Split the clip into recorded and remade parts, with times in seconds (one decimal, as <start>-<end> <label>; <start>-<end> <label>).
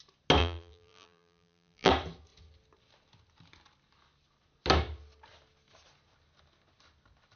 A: 0.0-0.4 recorded; 0.4-1.9 remade; 1.9-7.4 recorded